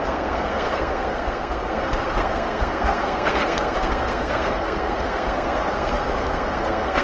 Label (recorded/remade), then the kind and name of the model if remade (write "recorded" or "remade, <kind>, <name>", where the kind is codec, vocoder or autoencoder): remade, codec, SNAC